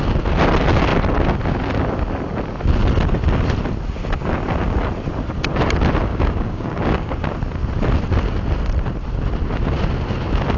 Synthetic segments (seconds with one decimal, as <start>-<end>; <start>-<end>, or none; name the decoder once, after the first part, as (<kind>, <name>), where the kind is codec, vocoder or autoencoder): 6.1-7.1 (codec, DAC)